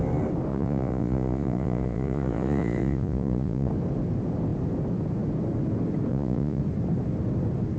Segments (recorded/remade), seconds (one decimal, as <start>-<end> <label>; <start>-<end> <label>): 0.0-0.5 recorded; 0.5-3.7 remade; 3.7-6.1 recorded; 6.1-6.6 remade; 6.6-7.8 recorded